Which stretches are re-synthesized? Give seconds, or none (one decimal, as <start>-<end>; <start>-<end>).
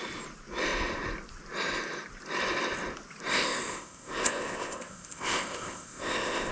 3.3-6.5